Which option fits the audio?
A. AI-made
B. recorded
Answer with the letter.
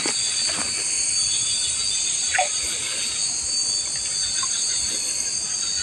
B